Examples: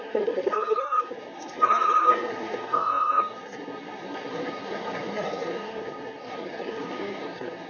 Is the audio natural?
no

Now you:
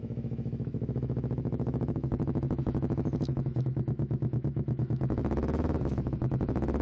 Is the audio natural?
no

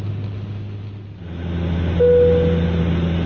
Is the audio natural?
yes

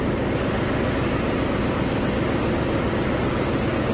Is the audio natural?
yes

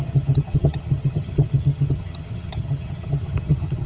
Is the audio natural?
no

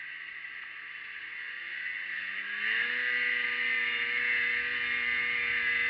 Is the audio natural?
yes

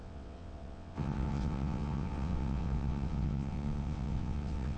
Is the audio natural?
no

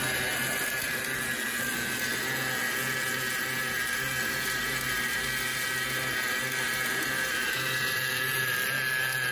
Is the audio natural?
yes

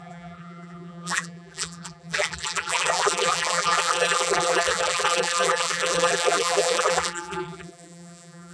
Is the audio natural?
no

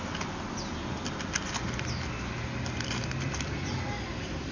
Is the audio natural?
yes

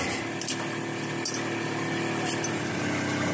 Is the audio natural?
yes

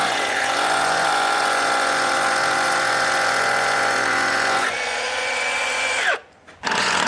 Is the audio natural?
no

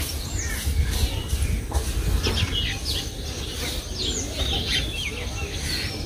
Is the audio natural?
yes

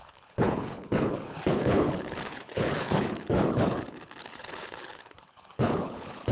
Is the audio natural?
no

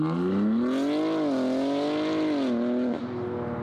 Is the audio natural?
yes